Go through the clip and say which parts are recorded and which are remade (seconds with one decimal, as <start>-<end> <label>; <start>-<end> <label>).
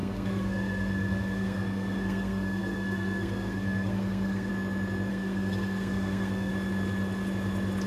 0.0-4.5 remade; 4.5-5.1 recorded; 5.1-6.5 remade; 6.5-7.9 recorded